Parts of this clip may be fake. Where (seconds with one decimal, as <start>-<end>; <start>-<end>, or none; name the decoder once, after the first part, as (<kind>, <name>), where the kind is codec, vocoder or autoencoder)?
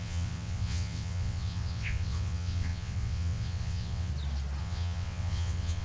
0.0-4.1 (vocoder, WaveNeXt); 4.6-5.8